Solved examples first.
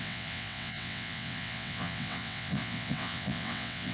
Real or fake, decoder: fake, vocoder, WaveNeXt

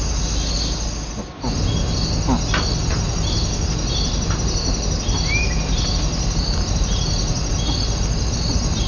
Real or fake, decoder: real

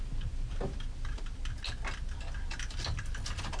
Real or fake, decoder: real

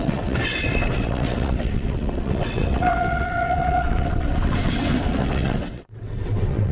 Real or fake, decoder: fake, vocoder, WaveNeXt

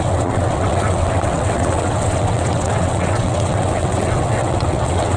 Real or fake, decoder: fake, vocoder, WaveNeXt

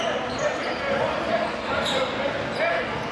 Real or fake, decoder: real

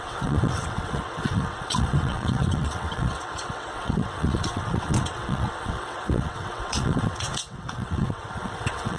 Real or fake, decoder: fake, vocoder, WaveNeXt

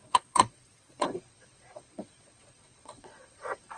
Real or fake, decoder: fake, vocoder, WaveNeXt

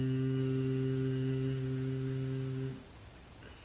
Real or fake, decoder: real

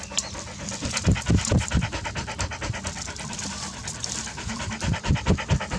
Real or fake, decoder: real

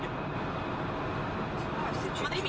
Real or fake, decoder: real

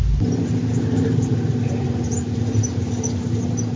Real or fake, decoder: real